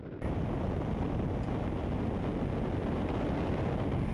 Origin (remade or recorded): recorded